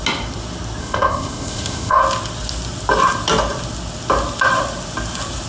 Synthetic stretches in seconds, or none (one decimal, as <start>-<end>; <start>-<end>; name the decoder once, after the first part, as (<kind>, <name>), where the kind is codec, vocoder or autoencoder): 0.8-2.0 (codec, ZipCodec)